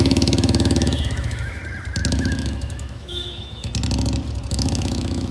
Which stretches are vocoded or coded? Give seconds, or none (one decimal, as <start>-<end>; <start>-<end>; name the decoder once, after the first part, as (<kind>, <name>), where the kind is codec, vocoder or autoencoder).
0.0-1.6 (autoencoder, DAC-VAE); 2.1-3.7; 4.5-5.3